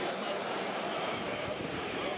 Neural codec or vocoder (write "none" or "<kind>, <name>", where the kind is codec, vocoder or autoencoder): vocoder, BigVGAN v2